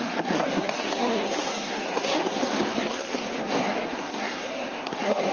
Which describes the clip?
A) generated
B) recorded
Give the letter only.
A